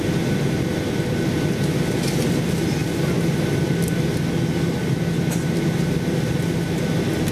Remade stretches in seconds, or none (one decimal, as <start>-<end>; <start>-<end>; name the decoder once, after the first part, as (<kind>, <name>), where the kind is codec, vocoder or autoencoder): none

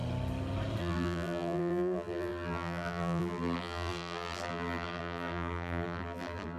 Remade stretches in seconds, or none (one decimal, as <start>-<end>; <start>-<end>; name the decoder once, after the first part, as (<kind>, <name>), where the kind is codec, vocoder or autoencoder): 0.8-6.6 (vocoder, BigVGAN v2)

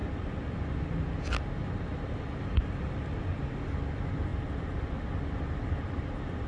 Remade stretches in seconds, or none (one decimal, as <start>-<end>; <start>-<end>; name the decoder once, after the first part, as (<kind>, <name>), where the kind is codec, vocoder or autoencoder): 2.4-4.3 (vocoder, BigVGAN v2); 5.4-6.5

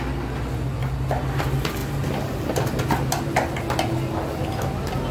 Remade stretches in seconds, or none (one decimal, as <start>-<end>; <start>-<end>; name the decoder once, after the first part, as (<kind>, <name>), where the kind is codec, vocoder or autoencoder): none

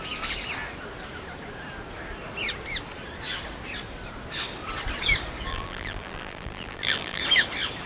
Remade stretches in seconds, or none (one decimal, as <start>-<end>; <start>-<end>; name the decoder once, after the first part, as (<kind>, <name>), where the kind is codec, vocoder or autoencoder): 5.5-7.2 (vocoder, BigVGAN v2)

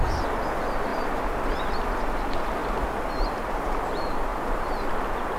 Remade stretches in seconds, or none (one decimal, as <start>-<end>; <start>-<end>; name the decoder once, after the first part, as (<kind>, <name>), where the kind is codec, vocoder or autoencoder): 4.3-4.9 (vocoder, BigVGAN v2)